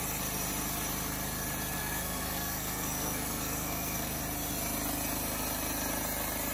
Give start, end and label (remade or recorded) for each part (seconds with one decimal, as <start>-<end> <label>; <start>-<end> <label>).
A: 0.0-1.8 recorded; 1.8-4.2 remade; 4.2-6.5 recorded